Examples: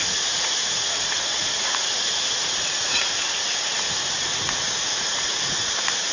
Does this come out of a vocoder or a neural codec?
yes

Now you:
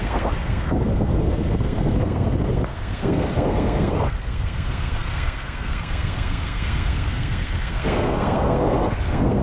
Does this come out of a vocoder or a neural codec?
yes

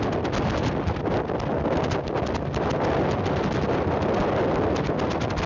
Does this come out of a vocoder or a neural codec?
no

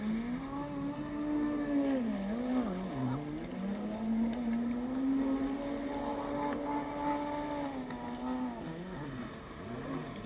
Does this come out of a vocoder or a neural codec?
no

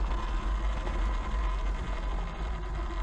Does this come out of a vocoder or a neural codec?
no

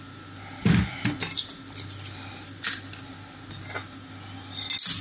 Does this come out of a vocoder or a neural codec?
no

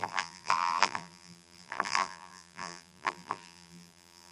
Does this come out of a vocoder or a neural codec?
yes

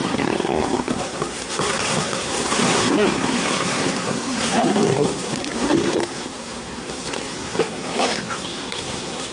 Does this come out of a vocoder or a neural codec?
yes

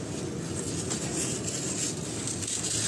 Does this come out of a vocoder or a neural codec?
no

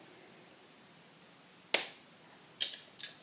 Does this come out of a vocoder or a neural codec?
no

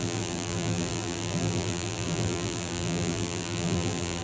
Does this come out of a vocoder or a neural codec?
yes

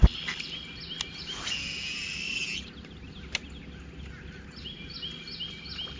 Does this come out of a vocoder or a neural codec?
no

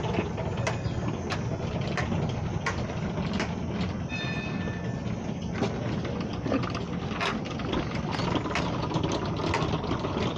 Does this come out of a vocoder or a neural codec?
no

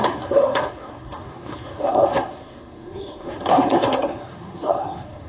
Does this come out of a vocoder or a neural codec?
yes